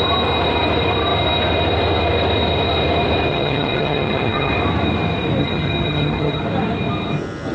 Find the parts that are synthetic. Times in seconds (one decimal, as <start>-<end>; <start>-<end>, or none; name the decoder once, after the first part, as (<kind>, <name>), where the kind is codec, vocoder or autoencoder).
3.3-4.5 (vocoder, HiFi-GAN); 5.4-6.4